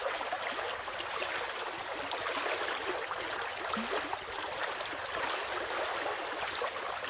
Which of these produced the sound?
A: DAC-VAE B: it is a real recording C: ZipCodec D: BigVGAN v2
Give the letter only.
B